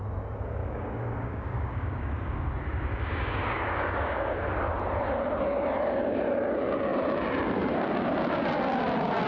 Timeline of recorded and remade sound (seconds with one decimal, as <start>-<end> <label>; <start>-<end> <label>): 0.0-0.6 recorded; 0.6-2.5 remade; 2.5-2.9 recorded; 2.9-4.3 remade; 4.3-9.3 recorded